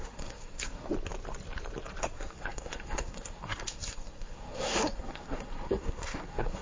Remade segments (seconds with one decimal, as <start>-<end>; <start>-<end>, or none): 0.0-0.9; 2.0-6.6